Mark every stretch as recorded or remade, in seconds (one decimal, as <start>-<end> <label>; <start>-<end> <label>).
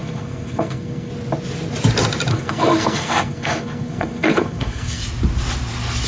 0.0-1.1 remade; 1.1-2.3 recorded; 2.3-5.0 remade; 5.0-6.1 recorded